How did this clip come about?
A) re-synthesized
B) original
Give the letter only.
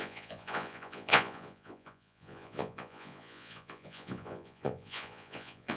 A